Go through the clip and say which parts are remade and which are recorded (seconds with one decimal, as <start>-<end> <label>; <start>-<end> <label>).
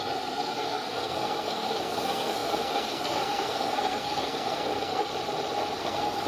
0.0-5.1 remade; 5.1-5.8 recorded; 5.8-6.3 remade